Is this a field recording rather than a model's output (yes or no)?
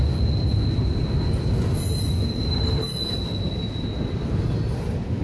yes